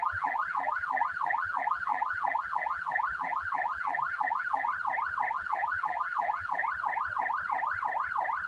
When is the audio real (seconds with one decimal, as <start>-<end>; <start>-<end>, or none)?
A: 4.7-5.3; 6.6-8.5